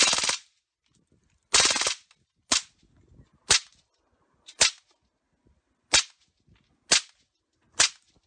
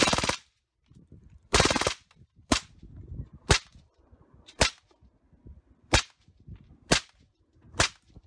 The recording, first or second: first